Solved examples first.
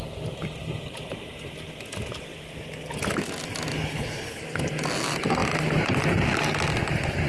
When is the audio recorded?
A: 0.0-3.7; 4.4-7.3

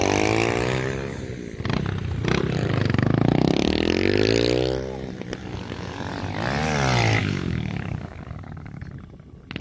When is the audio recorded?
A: 0.0-5.4; 6.1-7.2; 8.8-9.6

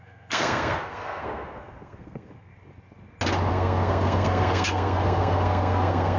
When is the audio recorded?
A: 2.5-3.5

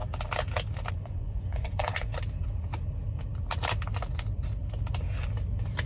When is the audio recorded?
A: 0.0-0.9; 2.1-5.9

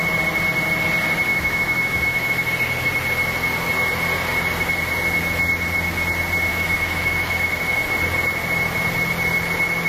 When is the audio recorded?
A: 0.0-1.3; 2.5-6.5; 7.8-9.9

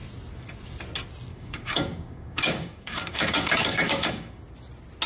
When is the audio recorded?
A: 0.0-1.3; 4.4-5.1

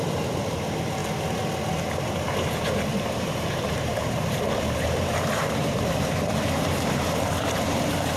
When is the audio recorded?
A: 1.0-1.7

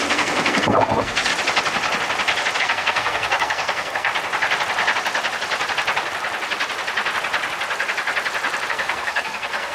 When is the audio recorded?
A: 1.3-2.6; 4.1-8.7